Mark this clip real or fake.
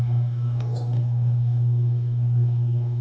fake